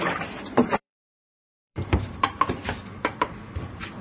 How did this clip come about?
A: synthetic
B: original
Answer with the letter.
A